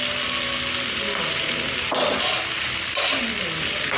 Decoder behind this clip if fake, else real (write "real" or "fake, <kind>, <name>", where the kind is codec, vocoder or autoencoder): real